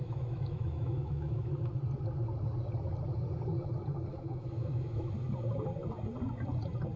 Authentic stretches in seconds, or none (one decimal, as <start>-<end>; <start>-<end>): 1.5-4.1; 5.1-7.0